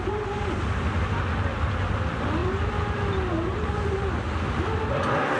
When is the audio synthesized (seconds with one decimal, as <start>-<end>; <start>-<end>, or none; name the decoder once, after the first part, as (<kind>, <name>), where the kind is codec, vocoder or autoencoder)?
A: none